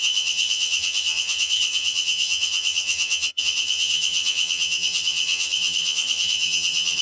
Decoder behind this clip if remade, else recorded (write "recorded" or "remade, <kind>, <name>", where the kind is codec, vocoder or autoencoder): remade, vocoder, HiFi-GAN